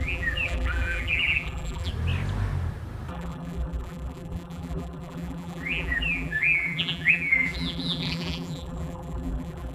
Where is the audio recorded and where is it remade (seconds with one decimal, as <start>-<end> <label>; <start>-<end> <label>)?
0.0-1.9 remade; 1.9-3.1 recorded; 3.1-9.7 remade